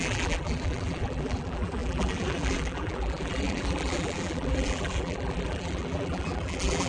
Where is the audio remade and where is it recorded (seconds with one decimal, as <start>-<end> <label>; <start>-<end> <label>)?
0.0-6.9 remade